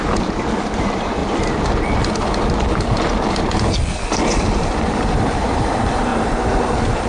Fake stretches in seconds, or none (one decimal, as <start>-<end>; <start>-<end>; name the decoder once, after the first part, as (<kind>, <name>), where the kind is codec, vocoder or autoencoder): 0.0-1.2 (vocoder, BigVGAN v2); 4.5-7.1